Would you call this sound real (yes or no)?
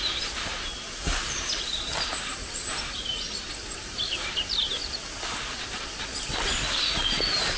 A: yes